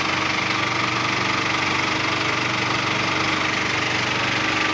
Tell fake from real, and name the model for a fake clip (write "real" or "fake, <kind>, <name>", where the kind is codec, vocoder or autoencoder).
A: real